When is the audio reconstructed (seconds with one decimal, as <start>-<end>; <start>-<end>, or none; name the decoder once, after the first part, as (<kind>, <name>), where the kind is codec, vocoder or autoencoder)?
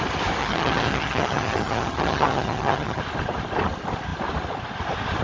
0.4-3.0 (vocoder, HiFi-GAN)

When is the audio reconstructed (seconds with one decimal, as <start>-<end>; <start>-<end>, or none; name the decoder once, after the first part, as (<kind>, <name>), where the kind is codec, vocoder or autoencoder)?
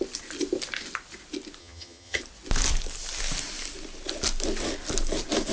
1.6-2.2 (vocoder, HiFi-GAN)